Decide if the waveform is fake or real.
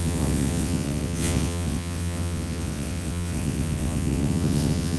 fake